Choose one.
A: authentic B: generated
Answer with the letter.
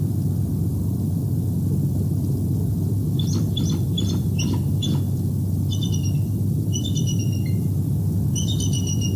A